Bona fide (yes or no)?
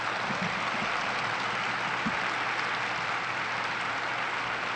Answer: yes